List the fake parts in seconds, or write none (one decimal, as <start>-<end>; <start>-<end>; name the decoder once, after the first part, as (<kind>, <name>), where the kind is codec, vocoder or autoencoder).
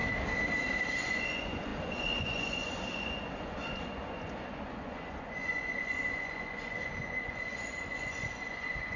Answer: 0.9-9.0 (vocoder, Vocos)